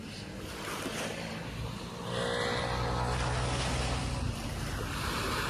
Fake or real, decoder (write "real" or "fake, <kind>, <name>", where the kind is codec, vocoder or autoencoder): real